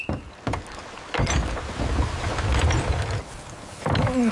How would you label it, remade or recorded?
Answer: recorded